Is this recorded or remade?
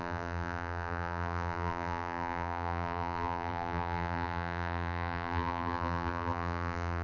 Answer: remade